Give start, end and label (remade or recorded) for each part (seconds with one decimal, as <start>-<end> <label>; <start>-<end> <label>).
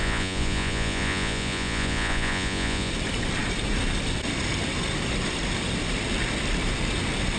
0.0-2.9 remade; 2.9-7.4 recorded